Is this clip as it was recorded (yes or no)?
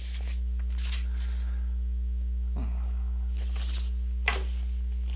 yes